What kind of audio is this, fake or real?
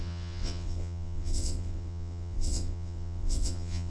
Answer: fake